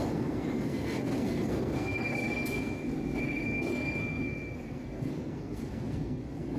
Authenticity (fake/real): fake